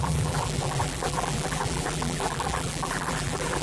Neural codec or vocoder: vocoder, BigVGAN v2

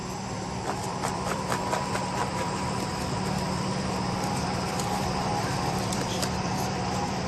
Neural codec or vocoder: vocoder, BigVGAN v2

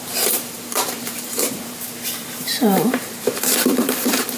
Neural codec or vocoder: vocoder, BigVGAN v2